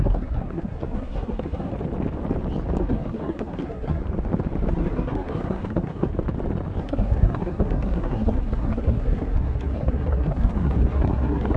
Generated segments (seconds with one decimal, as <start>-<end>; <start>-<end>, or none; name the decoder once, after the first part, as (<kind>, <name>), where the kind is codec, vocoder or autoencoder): 0.0-1.7 (codec, SNAC); 2.8-4.0; 4.7-6.1; 6.8-11.6